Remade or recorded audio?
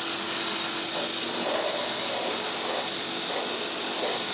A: recorded